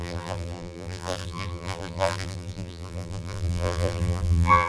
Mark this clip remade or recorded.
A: remade